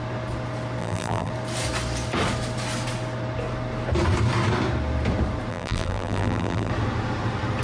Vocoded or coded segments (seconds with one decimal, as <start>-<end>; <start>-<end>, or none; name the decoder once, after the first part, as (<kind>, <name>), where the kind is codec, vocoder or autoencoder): 0.8-1.3 (vocoder, BigVGAN v2); 5.5-6.7